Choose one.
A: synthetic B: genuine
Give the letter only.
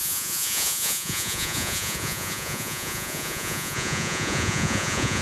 A